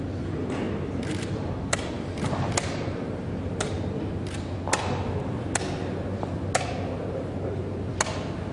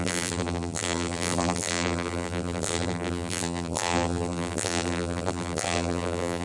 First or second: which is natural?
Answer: first